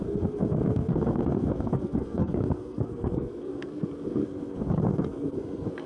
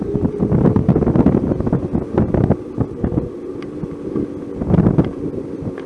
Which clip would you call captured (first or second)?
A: second